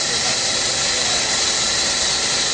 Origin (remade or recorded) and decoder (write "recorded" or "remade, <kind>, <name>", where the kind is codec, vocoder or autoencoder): recorded